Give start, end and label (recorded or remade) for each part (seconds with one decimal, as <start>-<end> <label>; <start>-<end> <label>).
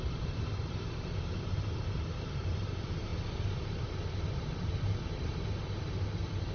0.0-3.1 remade; 3.1-5.9 recorded; 5.9-6.5 remade